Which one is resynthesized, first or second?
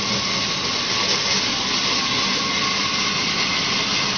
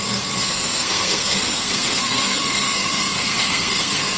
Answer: second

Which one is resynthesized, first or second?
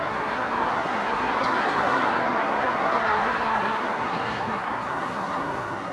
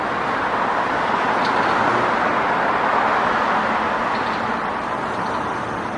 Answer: first